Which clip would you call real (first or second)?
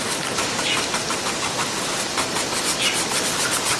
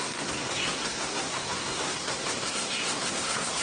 first